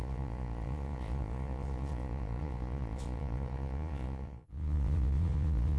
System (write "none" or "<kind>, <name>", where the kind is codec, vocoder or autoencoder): vocoder, Vocos